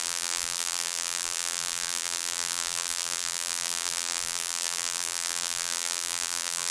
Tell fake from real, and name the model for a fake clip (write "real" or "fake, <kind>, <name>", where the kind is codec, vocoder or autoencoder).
fake, vocoder, BigVGAN v2